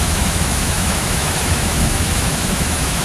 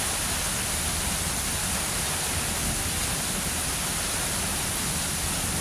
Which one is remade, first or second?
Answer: first